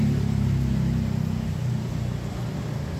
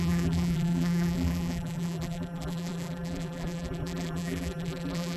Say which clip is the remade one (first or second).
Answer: second